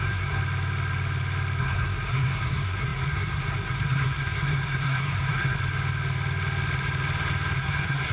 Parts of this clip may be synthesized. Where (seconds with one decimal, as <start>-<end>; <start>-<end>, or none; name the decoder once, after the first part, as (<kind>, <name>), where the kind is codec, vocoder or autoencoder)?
0.0-0.4 (codec, SNAC); 1.6-5.6; 7.6-8.1